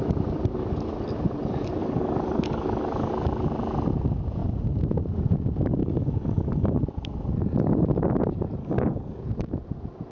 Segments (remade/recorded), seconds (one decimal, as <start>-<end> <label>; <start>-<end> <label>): 0.0-1.8 recorded; 1.8-3.1 remade; 3.1-5.8 recorded; 5.8-6.8 remade; 6.8-8.6 recorded; 8.6-9.2 remade; 9.2-10.1 recorded